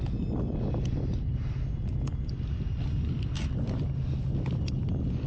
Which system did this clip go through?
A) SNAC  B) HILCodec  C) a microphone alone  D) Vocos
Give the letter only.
C